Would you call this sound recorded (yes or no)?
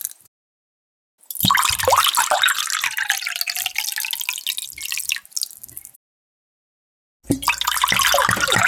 yes